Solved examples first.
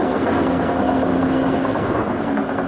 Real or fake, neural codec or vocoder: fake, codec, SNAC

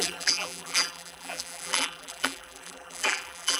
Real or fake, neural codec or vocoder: fake, vocoder, BigVGAN v2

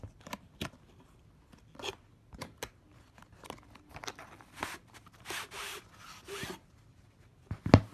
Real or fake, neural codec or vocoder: real